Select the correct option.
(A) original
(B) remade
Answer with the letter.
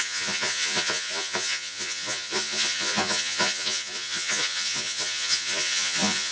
B